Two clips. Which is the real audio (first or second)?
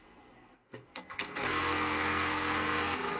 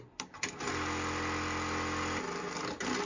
second